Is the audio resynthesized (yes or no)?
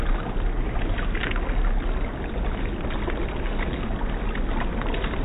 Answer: no